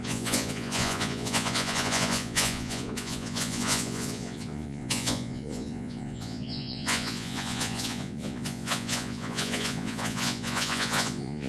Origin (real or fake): fake